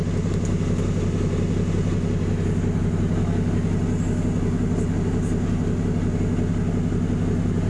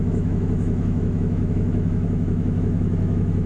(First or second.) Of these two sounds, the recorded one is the first